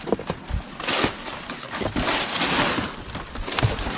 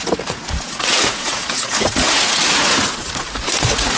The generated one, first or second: second